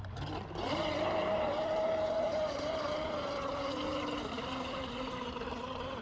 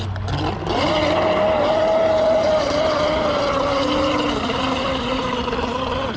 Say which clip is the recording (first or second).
second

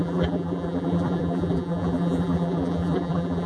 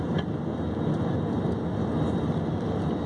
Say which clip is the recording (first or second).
second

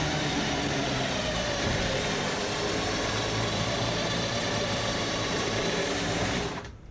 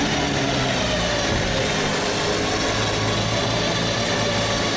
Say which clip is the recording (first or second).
second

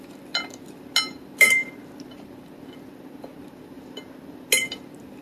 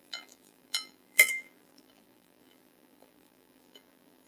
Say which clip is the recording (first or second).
first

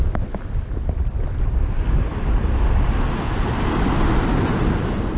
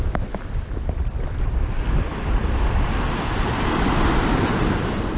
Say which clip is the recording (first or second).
first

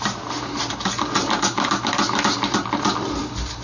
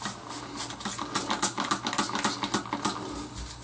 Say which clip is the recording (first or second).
second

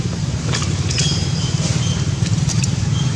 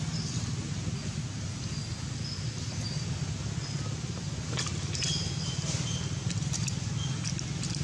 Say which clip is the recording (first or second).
second